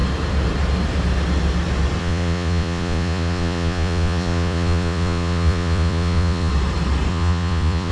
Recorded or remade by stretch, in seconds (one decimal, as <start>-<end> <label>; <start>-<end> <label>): 0.0-2.0 recorded; 2.0-6.5 remade; 6.5-7.1 recorded; 7.1-7.9 remade